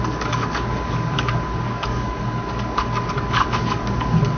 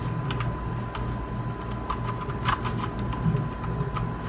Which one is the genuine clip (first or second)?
second